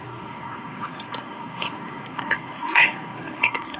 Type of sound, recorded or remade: remade